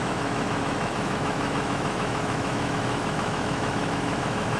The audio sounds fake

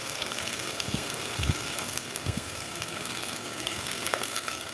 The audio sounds fake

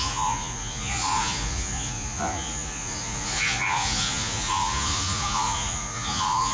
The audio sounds fake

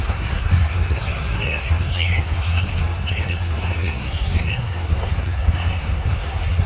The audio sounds fake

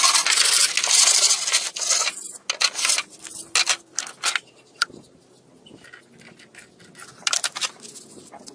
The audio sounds real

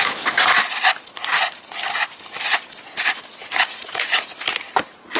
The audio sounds real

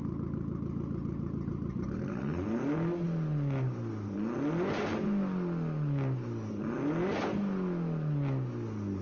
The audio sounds real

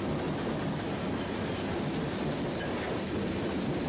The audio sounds real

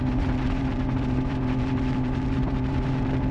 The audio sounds fake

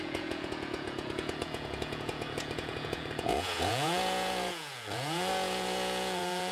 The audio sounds fake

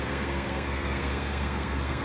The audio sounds fake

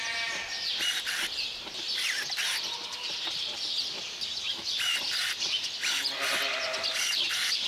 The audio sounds real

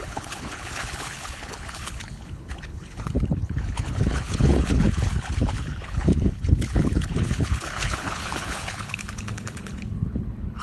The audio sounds fake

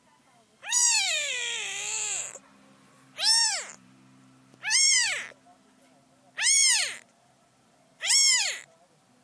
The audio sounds fake